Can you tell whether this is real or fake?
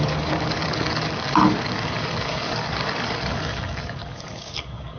fake